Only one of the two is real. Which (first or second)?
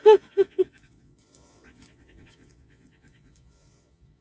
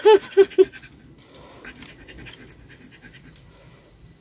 second